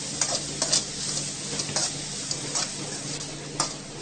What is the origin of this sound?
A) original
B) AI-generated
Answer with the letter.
A